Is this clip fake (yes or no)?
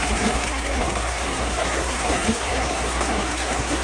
yes